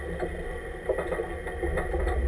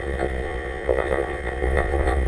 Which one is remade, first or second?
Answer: second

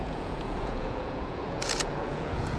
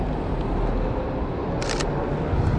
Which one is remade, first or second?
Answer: first